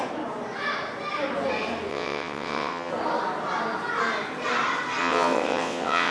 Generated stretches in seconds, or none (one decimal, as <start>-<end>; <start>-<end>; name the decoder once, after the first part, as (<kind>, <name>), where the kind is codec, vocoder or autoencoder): 1.9-2.9 (vocoder, WaveNeXt); 5.0-6.1